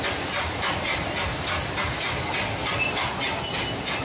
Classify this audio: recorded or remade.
recorded